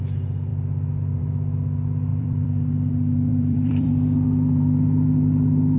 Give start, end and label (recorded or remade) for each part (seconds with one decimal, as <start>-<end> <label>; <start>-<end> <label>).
0.0-2.1 recorded; 2.1-2.9 remade; 2.9-3.3 recorded; 3.3-3.9 remade; 3.9-5.8 recorded